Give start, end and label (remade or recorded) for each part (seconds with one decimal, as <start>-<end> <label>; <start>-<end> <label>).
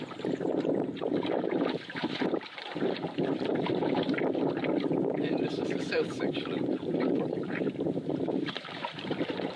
0.0-3.5 remade; 3.5-5.1 recorded; 5.1-9.6 remade